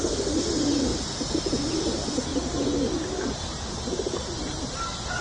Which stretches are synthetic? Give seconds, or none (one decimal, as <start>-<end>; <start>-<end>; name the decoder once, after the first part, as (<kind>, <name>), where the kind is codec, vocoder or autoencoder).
none

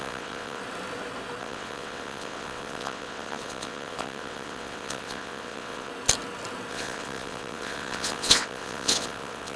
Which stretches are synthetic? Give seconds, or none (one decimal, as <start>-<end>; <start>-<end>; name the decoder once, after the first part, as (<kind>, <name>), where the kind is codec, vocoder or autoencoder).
0.0-0.6 (vocoder, WaveNeXt); 1.4-5.9; 6.7-9.6

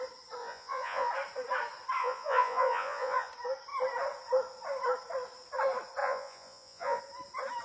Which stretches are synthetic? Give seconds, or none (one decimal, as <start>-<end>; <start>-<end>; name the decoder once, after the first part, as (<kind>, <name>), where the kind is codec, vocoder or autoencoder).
0.4-1.1 (vocoder, Vocos); 2.0-3.3; 6.0-7.0